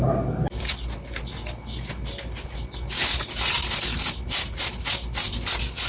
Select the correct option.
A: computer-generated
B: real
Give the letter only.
B